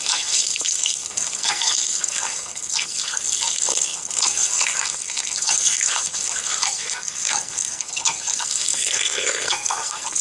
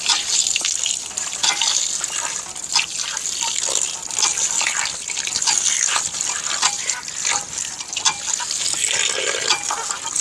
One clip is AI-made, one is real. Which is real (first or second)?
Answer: second